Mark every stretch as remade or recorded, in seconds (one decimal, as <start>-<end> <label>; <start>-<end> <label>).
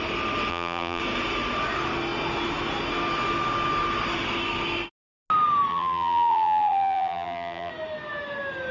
0.0-0.5 recorded; 0.5-1.0 remade; 1.0-5.7 recorded; 5.7-7.7 remade; 7.7-8.7 recorded